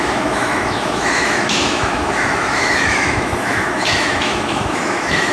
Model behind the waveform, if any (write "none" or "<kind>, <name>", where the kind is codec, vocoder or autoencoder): autoencoder, DAC-VAE